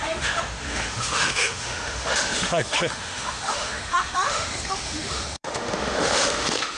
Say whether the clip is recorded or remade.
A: remade